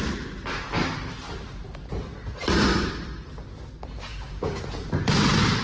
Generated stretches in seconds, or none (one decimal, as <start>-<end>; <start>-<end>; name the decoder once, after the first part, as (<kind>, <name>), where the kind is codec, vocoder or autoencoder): 4.1-4.6 (codec, DAC)